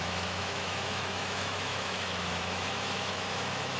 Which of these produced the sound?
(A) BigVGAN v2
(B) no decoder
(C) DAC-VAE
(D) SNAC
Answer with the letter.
C